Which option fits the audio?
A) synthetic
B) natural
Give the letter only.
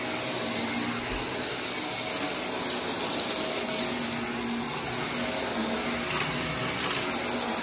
B